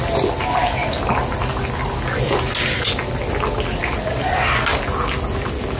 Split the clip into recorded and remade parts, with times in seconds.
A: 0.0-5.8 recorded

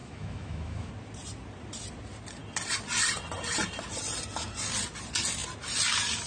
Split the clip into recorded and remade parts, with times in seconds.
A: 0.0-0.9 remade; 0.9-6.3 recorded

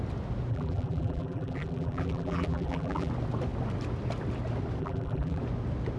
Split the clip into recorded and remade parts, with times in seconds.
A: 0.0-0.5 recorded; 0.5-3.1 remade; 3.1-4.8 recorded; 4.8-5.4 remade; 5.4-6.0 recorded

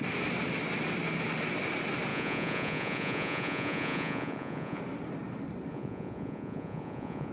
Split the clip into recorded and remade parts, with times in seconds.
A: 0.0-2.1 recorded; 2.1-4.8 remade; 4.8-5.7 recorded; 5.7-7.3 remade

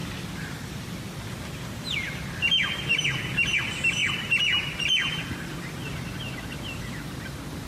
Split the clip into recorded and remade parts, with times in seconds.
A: 0.0-7.7 recorded

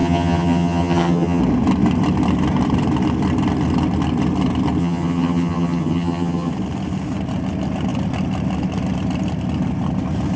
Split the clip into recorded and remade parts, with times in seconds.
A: 0.0-1.4 remade; 1.4-4.8 recorded; 4.8-6.5 remade; 6.5-10.4 recorded